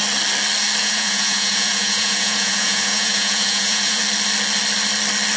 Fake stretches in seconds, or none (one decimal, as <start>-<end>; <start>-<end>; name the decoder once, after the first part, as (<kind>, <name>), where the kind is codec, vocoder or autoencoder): 0.8-4.0 (vocoder, Vocos)